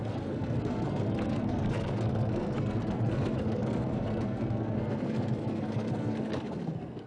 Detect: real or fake fake